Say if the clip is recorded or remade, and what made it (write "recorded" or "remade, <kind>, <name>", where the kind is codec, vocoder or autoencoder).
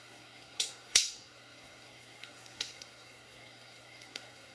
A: remade, codec, SNAC